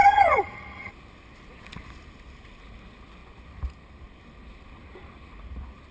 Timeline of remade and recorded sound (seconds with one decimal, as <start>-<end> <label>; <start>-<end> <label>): 0.0-0.9 remade; 0.9-5.9 recorded

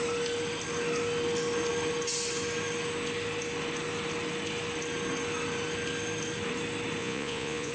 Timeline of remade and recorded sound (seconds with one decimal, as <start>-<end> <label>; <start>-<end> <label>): 0.0-7.0 recorded; 7.0-7.7 remade